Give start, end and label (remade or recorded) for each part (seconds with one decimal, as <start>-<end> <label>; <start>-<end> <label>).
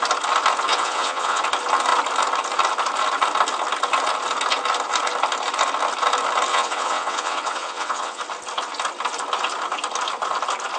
0.0-0.7 recorded; 0.7-1.4 remade; 1.4-6.5 recorded; 6.5-8.2 remade; 8.2-10.8 recorded